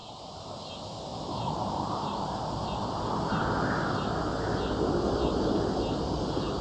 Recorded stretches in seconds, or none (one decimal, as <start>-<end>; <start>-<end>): 0.6-1.1; 2.4-6.6